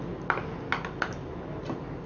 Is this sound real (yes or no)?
yes